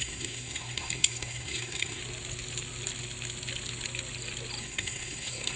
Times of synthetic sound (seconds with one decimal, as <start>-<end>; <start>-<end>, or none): 0.0-2.0; 4.6-5.6